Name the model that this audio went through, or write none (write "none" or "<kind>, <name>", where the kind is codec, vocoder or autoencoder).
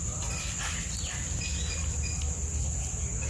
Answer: none